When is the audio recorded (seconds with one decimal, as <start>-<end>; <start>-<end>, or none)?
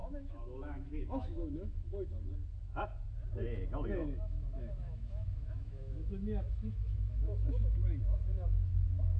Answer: 2.1-4.0; 8.0-9.2